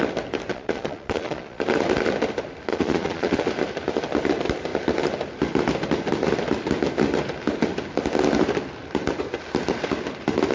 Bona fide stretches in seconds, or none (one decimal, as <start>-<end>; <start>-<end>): 0.0-0.5; 1.6-2.7; 3.5-10.5